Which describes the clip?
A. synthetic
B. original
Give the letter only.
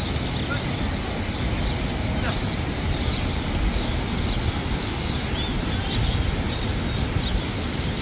B